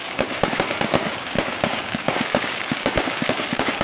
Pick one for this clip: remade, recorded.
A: remade